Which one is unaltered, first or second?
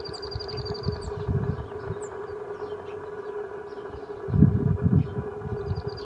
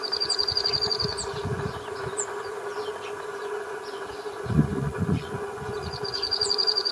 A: first